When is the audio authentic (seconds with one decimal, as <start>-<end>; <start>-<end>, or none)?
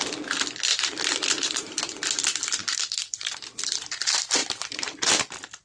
0.0-0.7; 1.8-2.6; 3.8-4.4; 5.1-5.6